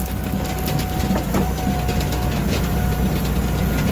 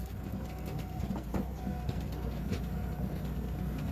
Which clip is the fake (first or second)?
second